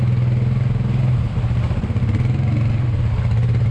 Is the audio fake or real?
real